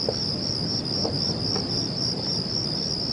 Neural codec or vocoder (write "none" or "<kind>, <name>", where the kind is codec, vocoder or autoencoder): none